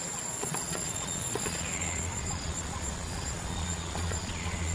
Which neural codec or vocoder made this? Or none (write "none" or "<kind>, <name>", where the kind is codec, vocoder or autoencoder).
vocoder, Vocos